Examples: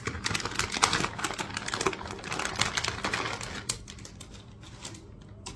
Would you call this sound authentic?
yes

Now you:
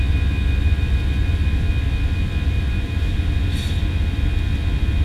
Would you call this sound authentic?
yes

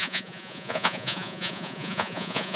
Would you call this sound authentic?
no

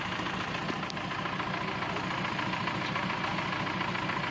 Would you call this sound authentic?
yes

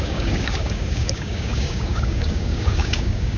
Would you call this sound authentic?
no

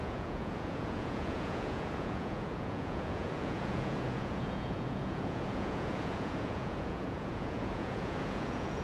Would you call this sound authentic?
no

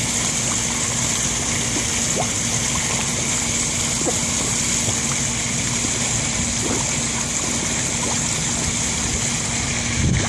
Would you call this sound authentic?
yes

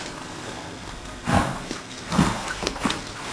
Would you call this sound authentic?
no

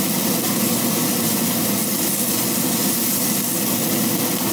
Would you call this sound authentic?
yes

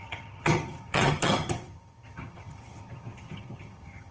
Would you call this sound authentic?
no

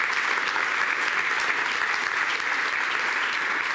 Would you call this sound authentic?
yes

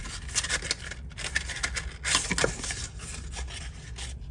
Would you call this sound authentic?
yes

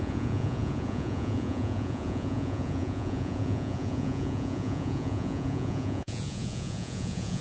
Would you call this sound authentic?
no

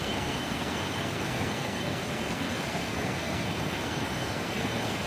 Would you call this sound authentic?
no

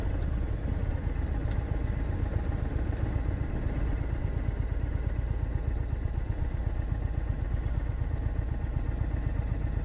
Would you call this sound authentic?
yes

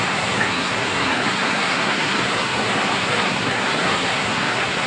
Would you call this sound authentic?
no